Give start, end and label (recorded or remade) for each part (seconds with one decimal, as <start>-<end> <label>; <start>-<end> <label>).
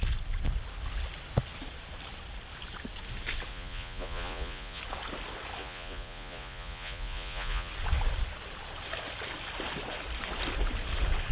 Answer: 0.0-3.5 recorded; 3.5-4.8 remade; 4.8-5.6 recorded; 5.6-7.7 remade; 7.7-11.3 recorded